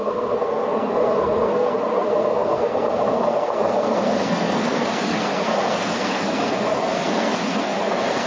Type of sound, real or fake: fake